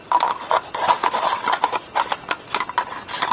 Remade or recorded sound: recorded